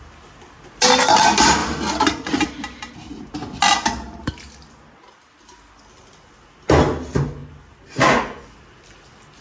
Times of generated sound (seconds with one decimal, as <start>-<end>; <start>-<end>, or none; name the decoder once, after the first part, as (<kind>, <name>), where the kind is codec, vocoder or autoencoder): 1.6-2.9 (vocoder, BigVGAN v2)